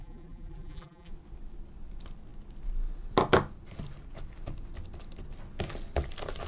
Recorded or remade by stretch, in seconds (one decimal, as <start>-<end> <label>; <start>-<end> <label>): 0.0-1.1 remade; 1.1-6.5 recorded